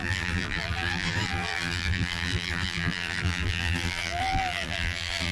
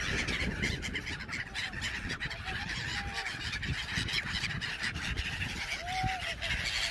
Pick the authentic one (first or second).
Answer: second